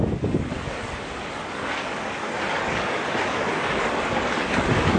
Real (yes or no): no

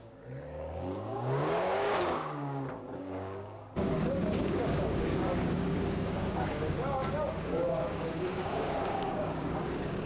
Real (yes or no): no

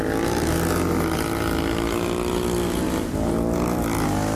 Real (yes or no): yes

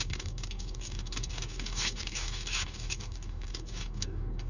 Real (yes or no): no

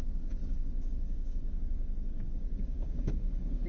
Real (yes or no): no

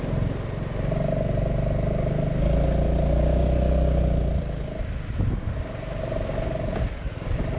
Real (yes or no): yes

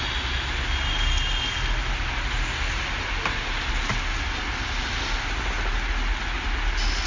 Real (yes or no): yes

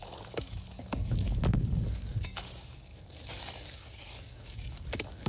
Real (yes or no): no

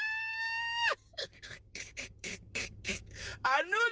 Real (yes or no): no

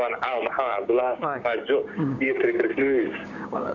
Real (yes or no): no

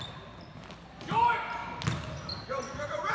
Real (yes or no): yes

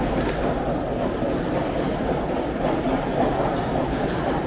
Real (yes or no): yes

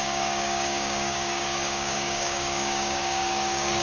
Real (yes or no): no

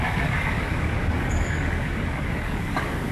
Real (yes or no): no